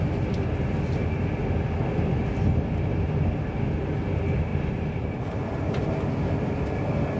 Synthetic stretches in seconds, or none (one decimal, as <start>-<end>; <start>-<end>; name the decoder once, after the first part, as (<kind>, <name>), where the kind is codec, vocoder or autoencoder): 4.5-5.7 (vocoder, BigVGAN v2)

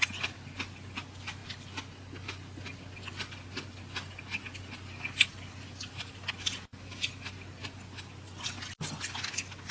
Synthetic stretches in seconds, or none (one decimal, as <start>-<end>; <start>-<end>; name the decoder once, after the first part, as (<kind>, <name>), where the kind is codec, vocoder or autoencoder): none

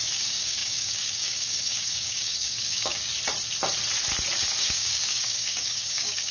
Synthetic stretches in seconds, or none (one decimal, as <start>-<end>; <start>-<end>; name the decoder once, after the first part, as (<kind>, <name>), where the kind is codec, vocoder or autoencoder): 0.0-3.1 (codec, DAC); 4.6-6.3

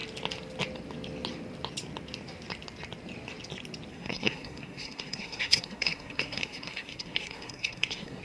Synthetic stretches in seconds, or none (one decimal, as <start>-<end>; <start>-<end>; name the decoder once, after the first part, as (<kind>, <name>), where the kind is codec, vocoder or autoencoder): 3.9-8.2 (codec, SNAC)

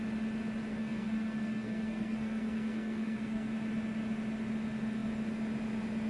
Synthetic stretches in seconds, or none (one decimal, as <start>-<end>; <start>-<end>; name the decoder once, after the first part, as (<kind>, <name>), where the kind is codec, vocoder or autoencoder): 0.7-3.5 (codec, SNAC)

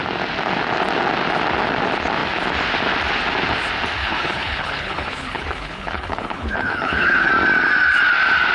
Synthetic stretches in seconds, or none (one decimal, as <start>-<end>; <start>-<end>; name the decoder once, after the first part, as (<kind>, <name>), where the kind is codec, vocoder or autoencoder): 4.0-7.3 (codec, HILCodec)

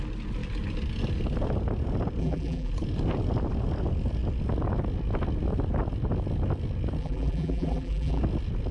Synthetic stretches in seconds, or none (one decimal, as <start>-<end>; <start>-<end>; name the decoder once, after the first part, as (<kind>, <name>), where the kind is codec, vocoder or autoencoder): 2.2-2.7 (vocoder, BigVGAN v2); 7.0-8.2